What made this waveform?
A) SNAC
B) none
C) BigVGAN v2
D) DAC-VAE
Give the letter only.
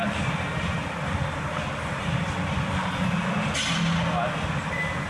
B